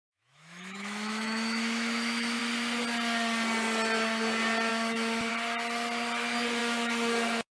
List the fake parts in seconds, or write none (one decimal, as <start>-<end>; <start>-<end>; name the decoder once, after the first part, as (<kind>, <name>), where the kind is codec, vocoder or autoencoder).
0.0-2.4 (autoencoder, DAC-VAE); 4.7-5.3; 6.6-7.6